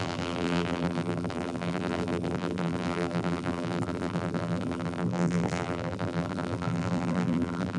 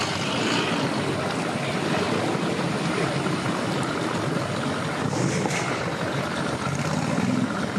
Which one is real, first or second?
second